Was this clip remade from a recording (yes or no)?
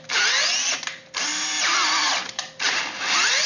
no